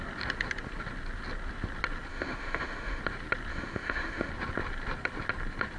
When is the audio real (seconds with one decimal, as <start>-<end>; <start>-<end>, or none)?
0.0-2.1; 3.0-3.5; 4.3-5.8